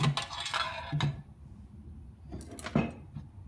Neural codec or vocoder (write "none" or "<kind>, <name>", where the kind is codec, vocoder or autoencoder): none